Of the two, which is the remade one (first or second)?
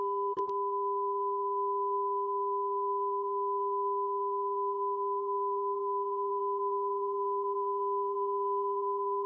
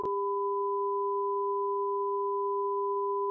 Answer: first